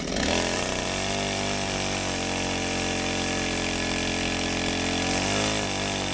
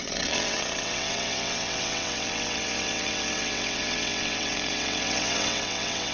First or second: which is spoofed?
second